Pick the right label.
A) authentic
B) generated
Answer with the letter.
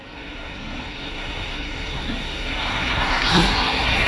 B